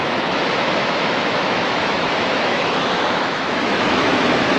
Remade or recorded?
remade